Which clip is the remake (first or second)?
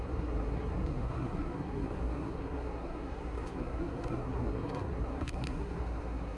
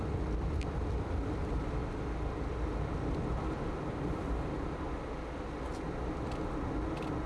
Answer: first